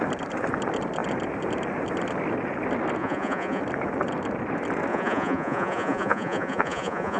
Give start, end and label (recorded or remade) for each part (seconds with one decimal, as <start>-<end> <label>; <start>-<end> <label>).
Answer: 0.0-3.0 recorded; 3.0-3.6 remade; 3.6-4.9 recorded; 4.9-7.2 remade